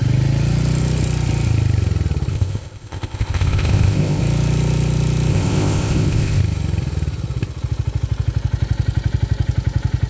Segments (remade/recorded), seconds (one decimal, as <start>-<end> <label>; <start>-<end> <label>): 0.0-2.3 recorded; 2.3-4.2 remade; 4.2-5.3 recorded; 5.3-6.4 remade; 6.4-10.1 recorded